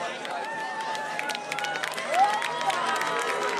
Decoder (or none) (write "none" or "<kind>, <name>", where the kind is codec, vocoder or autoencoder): none